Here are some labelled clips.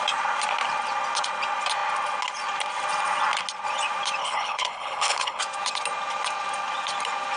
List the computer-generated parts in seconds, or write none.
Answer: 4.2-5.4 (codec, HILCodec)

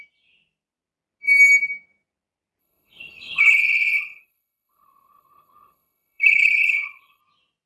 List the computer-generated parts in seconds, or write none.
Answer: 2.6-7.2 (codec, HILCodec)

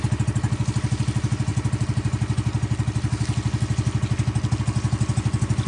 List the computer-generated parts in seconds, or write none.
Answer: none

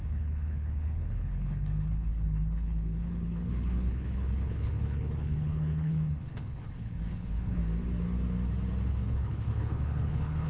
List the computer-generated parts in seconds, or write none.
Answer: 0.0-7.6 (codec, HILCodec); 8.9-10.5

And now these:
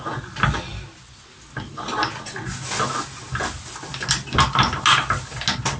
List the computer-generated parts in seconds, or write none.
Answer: none

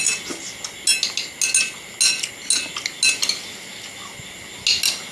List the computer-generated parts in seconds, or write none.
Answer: none